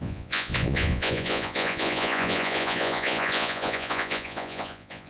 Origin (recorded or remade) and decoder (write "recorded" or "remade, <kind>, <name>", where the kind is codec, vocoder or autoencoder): remade, vocoder, Vocos